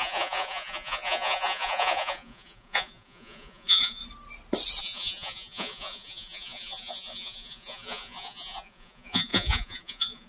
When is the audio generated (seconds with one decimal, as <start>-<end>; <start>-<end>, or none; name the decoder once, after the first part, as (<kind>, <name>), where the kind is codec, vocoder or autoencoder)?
0.0-4.0 (vocoder, Vocos); 4.8-10.3